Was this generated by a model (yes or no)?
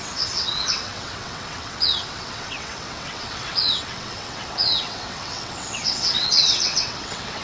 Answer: yes